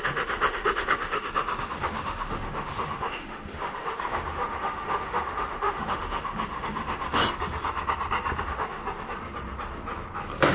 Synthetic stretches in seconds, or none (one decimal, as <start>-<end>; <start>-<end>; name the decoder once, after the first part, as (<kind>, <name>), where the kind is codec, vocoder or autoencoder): 0.0-7.2 (autoencoder, DAC-VAE); 8.4-8.8